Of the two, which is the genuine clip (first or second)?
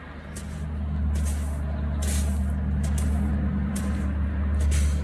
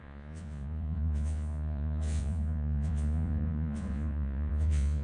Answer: first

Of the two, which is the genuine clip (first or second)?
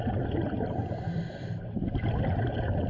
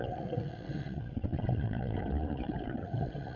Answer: first